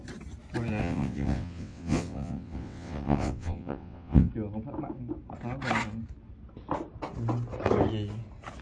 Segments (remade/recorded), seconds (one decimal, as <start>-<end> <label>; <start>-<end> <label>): 0.0-0.8 recorded; 0.8-4.3 remade; 4.3-8.6 recorded